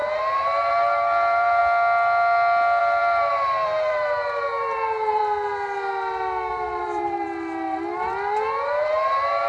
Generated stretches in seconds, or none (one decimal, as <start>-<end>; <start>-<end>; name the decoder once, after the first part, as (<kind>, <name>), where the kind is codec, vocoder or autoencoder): 0.0-1.6 (vocoder, BigVGAN v2); 2.8-5.2; 6.5-9.5